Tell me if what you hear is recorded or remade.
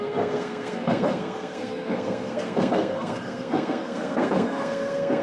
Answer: remade